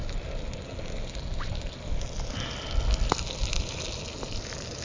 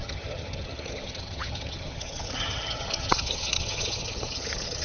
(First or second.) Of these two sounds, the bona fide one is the first